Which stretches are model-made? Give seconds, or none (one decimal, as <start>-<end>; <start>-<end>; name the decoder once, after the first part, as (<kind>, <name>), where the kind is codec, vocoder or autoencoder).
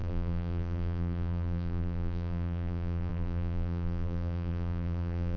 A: 0.0-5.4 (vocoder, BigVGAN v2)